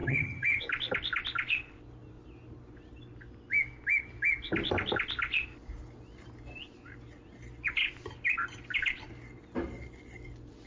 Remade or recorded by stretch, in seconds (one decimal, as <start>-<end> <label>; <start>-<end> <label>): 0.0-0.6 remade; 0.6-10.7 recorded